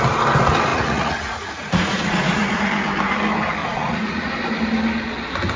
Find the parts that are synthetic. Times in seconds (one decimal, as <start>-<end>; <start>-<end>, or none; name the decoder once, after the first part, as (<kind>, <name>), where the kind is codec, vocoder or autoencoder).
0.7-2.6 (vocoder, Vocos); 3.6-4.3